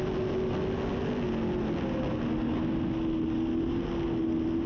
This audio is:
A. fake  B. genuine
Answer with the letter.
B